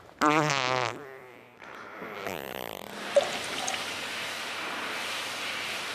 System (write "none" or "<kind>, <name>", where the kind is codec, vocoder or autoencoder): vocoder, BigVGAN v2